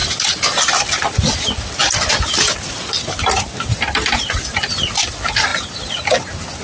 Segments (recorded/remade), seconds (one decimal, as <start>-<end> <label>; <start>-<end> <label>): 0.0-6.6 recorded